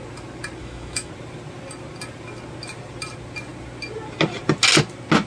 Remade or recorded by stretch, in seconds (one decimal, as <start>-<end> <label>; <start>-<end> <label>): 0.0-0.6 recorded; 0.6-1.1 remade; 1.1-5.3 recorded